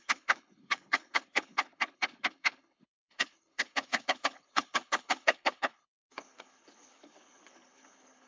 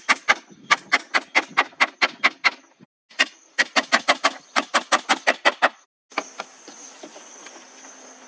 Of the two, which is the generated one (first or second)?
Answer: first